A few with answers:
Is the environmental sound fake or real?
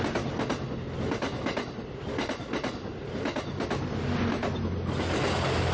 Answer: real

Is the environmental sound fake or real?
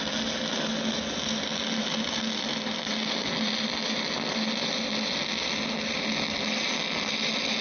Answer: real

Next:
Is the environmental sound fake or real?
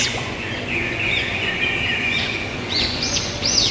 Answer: fake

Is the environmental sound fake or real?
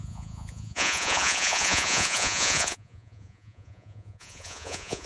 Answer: fake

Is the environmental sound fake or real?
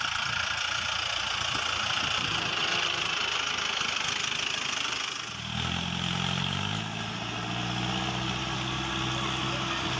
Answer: real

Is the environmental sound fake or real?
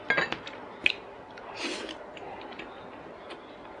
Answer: real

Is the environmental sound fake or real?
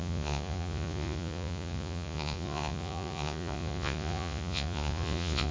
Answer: fake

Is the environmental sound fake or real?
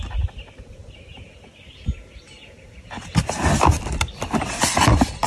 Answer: real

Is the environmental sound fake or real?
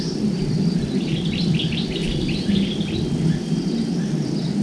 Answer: real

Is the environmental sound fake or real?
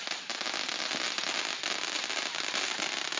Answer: real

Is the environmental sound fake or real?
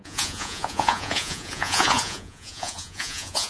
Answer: fake